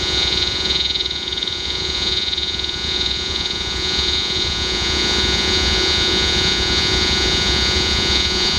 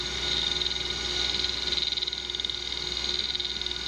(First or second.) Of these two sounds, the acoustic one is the second